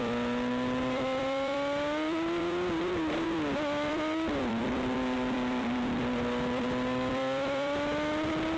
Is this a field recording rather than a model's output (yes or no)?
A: no